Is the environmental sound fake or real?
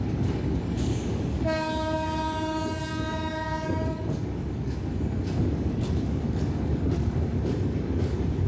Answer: fake